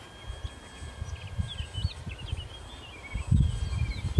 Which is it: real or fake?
real